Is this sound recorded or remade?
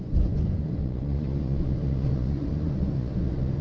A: remade